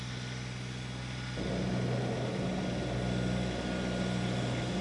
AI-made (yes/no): no